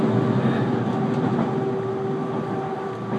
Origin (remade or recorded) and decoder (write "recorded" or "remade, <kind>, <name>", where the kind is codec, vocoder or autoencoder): recorded